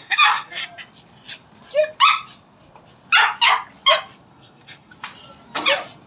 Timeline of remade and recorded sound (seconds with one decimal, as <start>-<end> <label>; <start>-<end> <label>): 0.0-0.6 remade; 0.6-4.3 recorded; 4.3-4.9 remade; 4.9-6.1 recorded